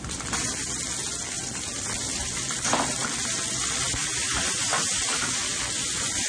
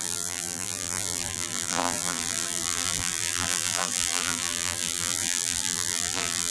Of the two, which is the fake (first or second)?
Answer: second